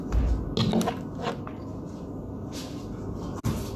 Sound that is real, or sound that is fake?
real